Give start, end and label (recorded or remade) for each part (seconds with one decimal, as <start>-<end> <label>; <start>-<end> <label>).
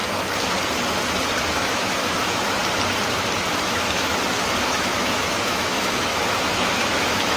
0.0-1.5 recorded; 1.5-2.6 remade; 2.6-3.5 recorded; 3.5-4.1 remade; 4.1-4.7 recorded; 4.7-7.4 remade